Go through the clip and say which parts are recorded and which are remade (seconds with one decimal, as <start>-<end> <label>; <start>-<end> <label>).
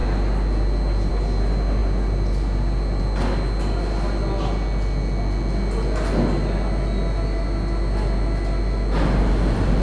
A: 0.0-9.8 recorded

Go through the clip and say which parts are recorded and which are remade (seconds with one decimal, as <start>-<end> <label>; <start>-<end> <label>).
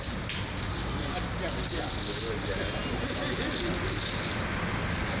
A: 0.0-5.2 recorded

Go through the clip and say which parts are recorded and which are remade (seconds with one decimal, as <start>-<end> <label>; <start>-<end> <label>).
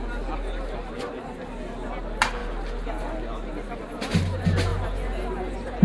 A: 0.0-5.8 recorded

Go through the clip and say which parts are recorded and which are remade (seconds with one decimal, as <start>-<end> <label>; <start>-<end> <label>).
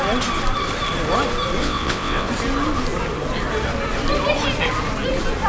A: 0.0-1.6 recorded; 1.6-2.3 remade; 2.3-5.5 recorded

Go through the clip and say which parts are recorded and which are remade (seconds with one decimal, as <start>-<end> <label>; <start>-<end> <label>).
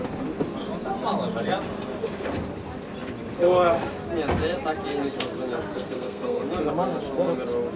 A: 0.0-5.7 recorded; 5.7-6.4 remade; 6.4-7.8 recorded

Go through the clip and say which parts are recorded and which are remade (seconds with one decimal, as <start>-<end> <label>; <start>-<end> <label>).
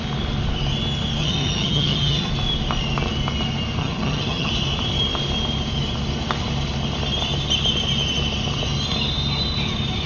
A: 0.0-1.2 recorded; 1.2-2.3 remade; 2.3-3.8 recorded; 3.8-4.5 remade; 4.5-10.1 recorded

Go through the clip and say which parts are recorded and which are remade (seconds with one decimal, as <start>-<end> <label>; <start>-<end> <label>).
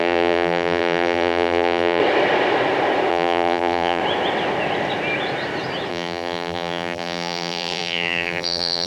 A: 0.0-2.0 remade; 2.0-3.1 recorded; 3.1-4.0 remade; 4.0-5.9 recorded; 5.9-8.9 remade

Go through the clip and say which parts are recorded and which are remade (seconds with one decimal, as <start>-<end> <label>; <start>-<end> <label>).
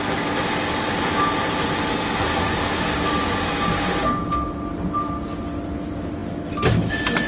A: 0.0-1.9 recorded; 1.9-4.5 remade; 4.5-7.3 recorded